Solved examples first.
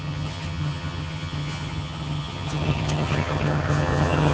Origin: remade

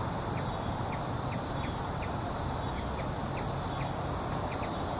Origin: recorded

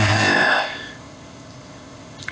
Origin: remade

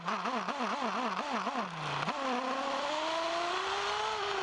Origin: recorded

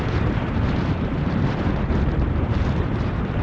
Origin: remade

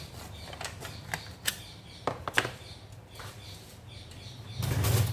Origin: recorded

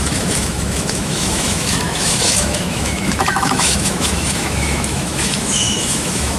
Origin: remade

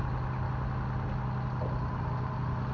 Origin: recorded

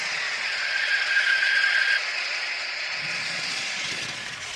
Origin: remade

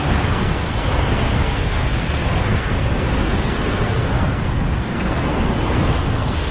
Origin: remade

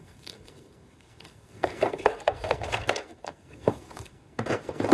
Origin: remade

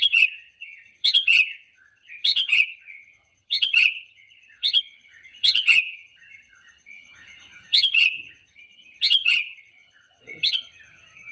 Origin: remade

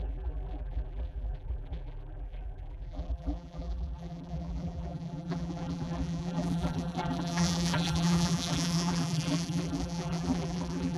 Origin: remade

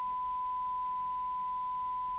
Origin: recorded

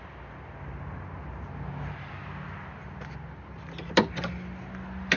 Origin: recorded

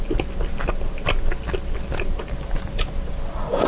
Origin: recorded